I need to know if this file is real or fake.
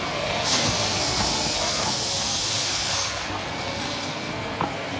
fake